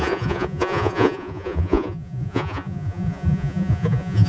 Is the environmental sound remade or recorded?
remade